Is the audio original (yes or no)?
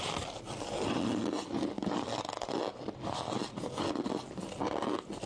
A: yes